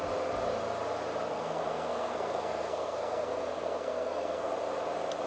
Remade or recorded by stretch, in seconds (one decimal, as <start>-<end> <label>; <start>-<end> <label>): 0.0-1.3 recorded; 1.3-4.5 remade; 4.5-5.3 recorded